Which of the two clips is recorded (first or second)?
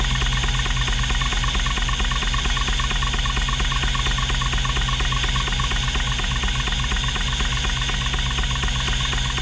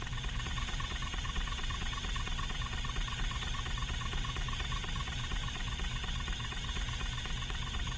first